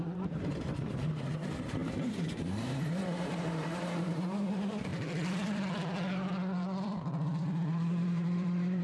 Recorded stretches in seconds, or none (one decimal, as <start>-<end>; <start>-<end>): none